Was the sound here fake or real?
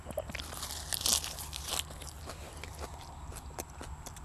real